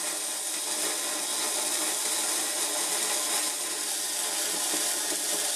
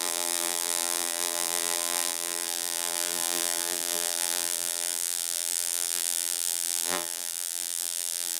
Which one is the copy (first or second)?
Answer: second